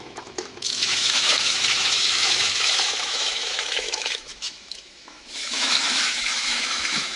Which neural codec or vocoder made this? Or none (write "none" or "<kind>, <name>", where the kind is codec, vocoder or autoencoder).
autoencoder, DAC-VAE